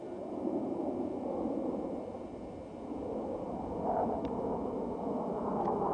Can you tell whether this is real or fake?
real